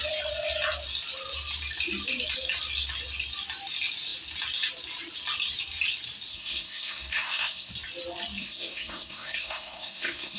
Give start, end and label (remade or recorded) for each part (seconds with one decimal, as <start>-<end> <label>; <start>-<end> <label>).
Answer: 0.0-6.3 recorded; 6.3-7.7 remade; 7.7-8.4 recorded; 8.4-10.4 remade